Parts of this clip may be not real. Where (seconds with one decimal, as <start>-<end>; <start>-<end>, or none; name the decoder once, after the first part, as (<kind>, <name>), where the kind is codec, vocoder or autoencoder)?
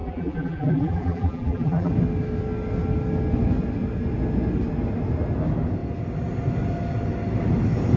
0.0-1.9 (vocoder, BigVGAN v2)